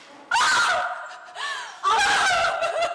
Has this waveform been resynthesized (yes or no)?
no